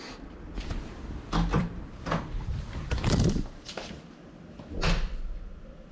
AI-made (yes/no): yes